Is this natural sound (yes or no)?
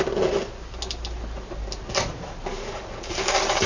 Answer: yes